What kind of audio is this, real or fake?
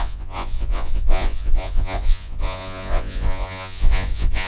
fake